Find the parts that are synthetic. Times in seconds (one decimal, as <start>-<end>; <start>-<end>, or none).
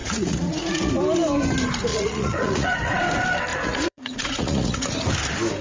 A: 0.0-0.9; 1.9-3.0; 3.5-5.1